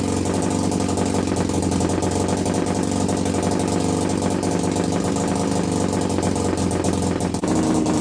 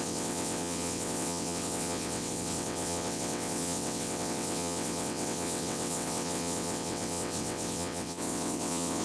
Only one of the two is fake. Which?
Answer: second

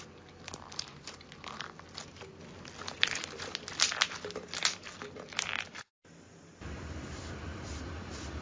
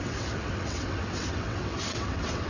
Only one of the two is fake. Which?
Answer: second